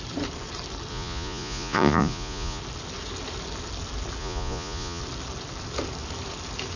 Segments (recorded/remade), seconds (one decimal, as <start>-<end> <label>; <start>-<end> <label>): 0.0-0.9 recorded; 0.9-2.6 remade; 2.6-4.2 recorded; 4.2-5.0 remade; 5.0-6.8 recorded